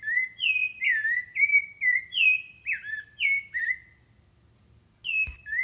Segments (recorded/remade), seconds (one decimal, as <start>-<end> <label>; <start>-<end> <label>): 0.0-5.6 recorded